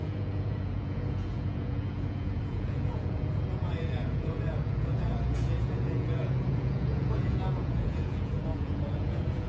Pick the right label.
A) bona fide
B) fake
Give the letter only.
B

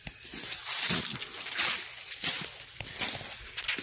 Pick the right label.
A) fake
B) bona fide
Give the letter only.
B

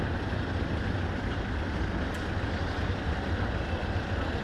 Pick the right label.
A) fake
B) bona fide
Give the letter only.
B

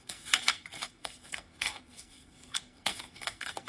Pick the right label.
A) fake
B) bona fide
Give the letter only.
A